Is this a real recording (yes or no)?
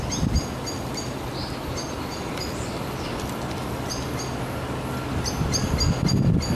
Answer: yes